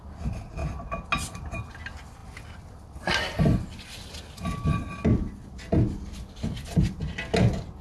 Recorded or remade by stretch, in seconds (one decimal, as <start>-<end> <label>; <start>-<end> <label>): 0.0-7.8 recorded